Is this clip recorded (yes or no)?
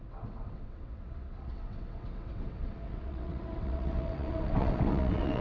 no